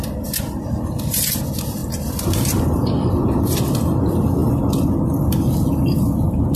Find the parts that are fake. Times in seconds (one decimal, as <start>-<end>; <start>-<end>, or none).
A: none